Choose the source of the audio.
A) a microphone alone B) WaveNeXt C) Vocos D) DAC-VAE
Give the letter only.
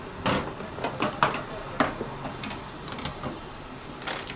A